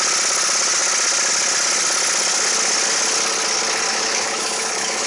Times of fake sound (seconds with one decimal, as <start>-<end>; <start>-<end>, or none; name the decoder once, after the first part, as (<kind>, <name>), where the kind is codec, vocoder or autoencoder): 3.9-5.1 (autoencoder, DAC-VAE)